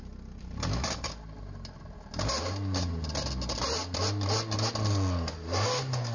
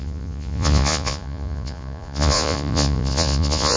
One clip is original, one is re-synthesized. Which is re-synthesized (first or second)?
second